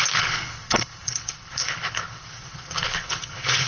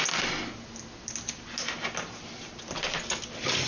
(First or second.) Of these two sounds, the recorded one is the second